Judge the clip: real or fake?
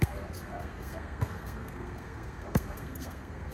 fake